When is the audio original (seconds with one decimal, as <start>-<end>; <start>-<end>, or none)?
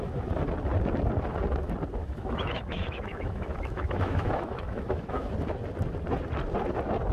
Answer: 0.0-2.0; 5.3-7.1